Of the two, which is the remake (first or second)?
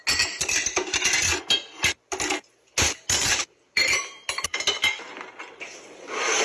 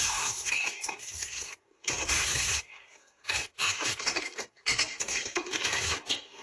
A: second